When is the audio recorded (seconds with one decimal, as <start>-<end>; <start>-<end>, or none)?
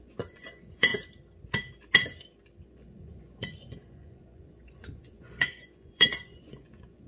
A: 0.9-2.6